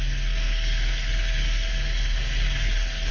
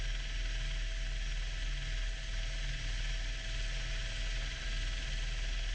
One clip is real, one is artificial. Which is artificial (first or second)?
first